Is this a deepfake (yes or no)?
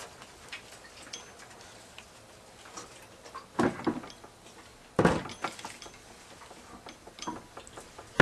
no